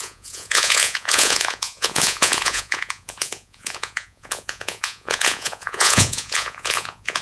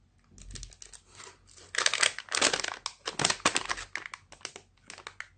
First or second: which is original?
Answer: second